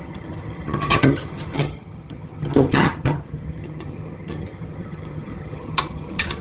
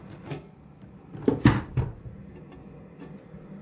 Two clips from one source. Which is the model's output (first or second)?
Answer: first